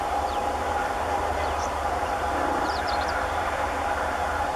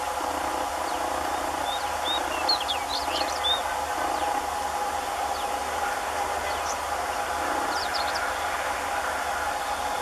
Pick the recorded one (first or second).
second